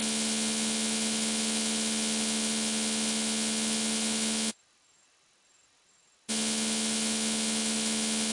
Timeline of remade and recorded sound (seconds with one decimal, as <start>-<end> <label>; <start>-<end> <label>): 0.0-4.5 remade; 4.5-6.3 recorded; 6.3-8.3 remade